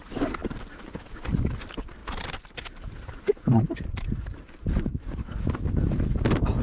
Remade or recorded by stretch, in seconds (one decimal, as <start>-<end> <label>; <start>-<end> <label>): 0.0-2.0 recorded; 2.0-5.5 remade; 5.5-6.6 recorded